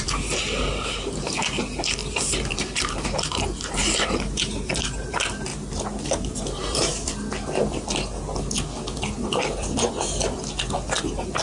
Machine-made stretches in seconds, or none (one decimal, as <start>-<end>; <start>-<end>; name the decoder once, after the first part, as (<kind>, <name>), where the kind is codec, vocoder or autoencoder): 0.0-2.0 (vocoder, BigVGAN v2); 2.5-5.5; 6.4-6.9; 11.0-11.4